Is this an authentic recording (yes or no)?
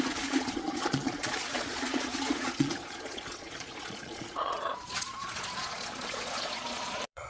no